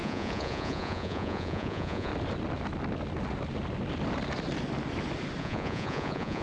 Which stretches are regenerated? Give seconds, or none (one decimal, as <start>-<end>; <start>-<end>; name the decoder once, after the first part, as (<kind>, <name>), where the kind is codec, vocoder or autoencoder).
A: 0.0-2.1 (vocoder, Vocos); 5.4-6.4